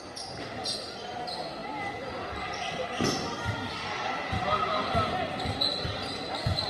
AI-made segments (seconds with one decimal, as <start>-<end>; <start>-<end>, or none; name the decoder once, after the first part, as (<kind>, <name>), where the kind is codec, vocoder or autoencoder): none